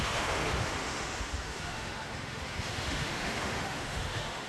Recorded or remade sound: remade